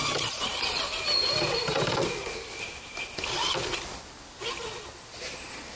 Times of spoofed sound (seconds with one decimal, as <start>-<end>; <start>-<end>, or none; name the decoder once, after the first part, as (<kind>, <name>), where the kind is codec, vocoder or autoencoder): none